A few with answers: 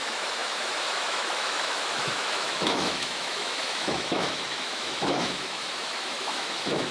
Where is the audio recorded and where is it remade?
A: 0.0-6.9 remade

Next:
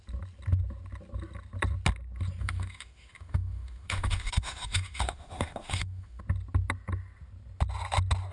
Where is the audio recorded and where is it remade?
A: 0.0-2.4 recorded; 2.4-6.2 remade; 6.2-8.3 recorded

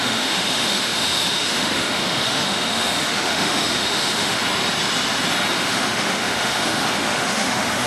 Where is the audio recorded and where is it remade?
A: 0.0-4.4 remade; 4.4-5.5 recorded; 5.5-7.9 remade

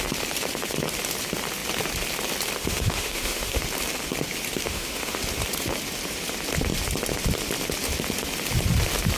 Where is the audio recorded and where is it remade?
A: 0.0-2.6 recorded; 2.6-3.6 remade; 3.6-4.6 recorded; 4.6-5.2 remade; 5.2-9.2 recorded

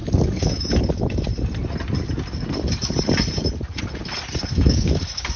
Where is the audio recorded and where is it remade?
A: 0.0-1.3 remade; 1.3-4.5 recorded; 4.5-5.4 remade

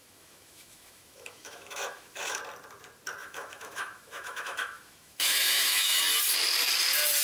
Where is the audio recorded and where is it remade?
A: 0.0-2.4 remade; 2.4-3.2 recorded; 3.2-6.0 remade; 6.0-7.2 recorded

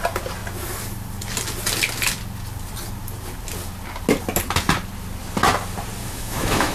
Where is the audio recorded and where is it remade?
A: 0.0-6.0 recorded; 6.0-6.7 remade